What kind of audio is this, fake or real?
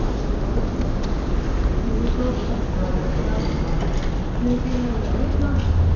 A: real